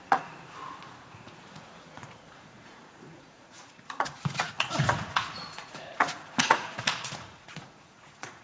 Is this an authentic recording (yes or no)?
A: no